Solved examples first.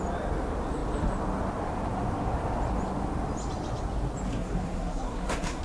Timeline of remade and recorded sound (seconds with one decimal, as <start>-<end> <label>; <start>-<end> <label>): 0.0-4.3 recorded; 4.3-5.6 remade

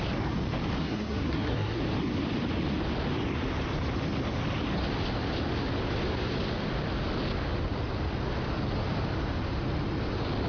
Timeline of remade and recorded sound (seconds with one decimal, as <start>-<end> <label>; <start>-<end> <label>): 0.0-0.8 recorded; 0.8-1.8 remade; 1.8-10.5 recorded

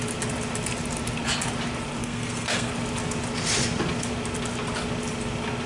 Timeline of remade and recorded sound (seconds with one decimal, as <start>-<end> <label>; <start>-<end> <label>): 0.0-2.0 recorded; 2.0-2.7 remade; 2.7-5.7 recorded

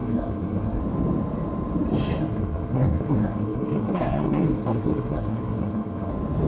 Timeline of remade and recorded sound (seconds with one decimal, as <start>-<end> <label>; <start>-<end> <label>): 0.0-0.8 remade; 0.8-2.2 recorded; 2.2-6.1 remade; 6.1-6.5 recorded

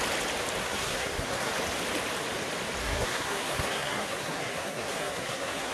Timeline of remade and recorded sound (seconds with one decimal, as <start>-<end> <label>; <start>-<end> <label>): 0.0-0.6 recorded; 0.6-1.5 remade; 1.5-2.8 recorded; 2.8-5.7 remade

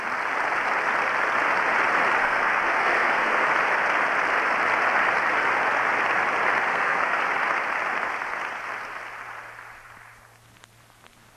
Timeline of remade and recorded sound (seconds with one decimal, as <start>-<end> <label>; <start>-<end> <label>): 0.0-2.2 recorded; 2.2-3.4 remade; 3.4-6.7 recorded; 6.7-7.2 remade; 7.2-11.4 recorded

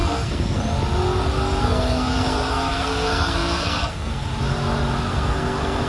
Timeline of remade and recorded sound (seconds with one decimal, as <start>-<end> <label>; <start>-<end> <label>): 0.0-0.6 remade; 0.6-1.6 recorded; 1.6-4.3 remade; 4.3-5.1 recorded; 5.1-5.9 remade

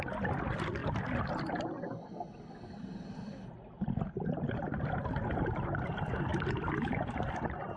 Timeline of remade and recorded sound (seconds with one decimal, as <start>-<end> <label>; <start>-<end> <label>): 0.0-7.8 recorded